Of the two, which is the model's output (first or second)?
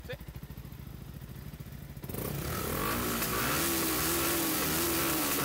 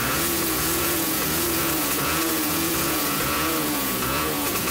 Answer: second